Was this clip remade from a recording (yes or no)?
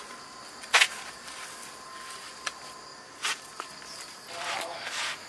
no